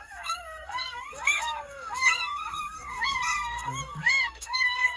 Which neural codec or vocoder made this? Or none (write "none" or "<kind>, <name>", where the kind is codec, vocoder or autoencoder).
codec, SNAC